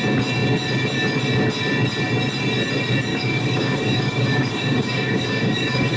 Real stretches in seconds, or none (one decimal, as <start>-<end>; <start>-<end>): 0.0-3.1